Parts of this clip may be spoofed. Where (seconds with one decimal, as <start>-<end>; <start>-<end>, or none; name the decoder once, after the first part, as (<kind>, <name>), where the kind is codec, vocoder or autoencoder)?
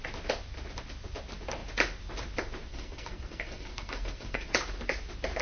2.7-4.5 (codec, SNAC)